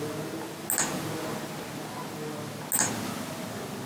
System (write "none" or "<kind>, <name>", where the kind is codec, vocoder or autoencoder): none